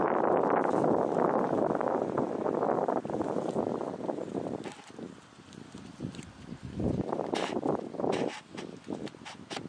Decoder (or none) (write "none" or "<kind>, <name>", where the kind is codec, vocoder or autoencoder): none